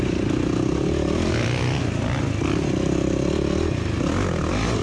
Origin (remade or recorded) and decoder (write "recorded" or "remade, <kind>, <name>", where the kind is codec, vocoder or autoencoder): recorded